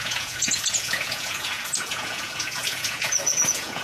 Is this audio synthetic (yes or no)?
yes